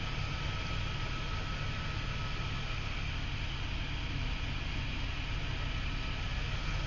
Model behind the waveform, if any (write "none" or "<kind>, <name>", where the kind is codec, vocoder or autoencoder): none